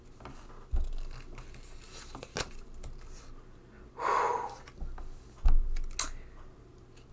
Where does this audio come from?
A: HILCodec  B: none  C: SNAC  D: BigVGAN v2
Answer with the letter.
B